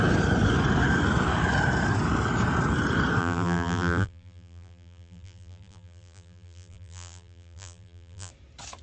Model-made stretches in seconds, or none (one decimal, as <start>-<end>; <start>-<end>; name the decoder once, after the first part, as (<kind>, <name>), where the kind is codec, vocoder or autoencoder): 3.2-8.3 (vocoder, BigVGAN v2)

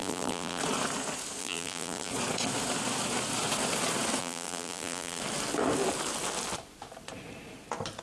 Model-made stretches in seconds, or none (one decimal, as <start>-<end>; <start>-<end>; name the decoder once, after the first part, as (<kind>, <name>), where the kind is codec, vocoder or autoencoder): 0.0-0.6 (vocoder, BigVGAN v2); 1.4-2.1; 4.2-5.2